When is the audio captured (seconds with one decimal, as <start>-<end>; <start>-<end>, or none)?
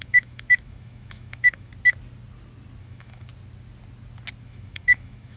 1.7-2.8; 3.3-4.4